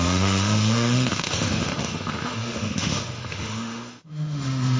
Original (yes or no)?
no